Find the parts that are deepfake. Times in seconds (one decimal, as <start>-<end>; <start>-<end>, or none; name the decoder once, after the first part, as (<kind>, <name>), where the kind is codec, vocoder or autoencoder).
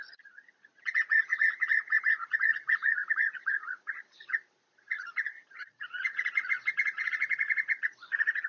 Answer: 0.0-8.5 (vocoder, Vocos)